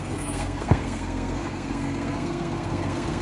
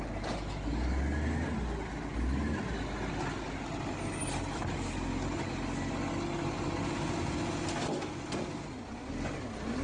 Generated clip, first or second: first